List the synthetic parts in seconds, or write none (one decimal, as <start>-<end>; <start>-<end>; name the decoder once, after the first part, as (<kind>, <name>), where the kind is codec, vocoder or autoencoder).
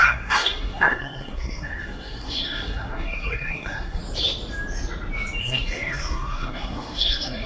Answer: 0.0-4.0 (codec, SNAC); 5.4-7.5